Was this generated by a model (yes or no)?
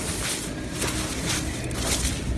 no